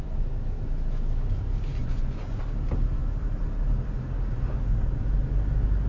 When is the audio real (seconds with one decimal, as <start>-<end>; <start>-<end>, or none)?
0.0-1.8; 2.4-5.9